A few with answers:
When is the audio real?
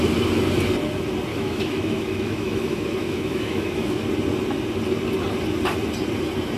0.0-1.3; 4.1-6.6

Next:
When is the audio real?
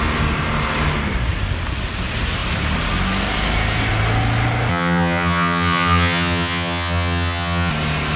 0.0-4.7; 7.7-8.2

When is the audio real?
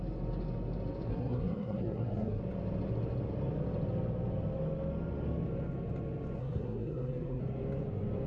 0.0-1.1; 2.4-6.4; 7.4-8.3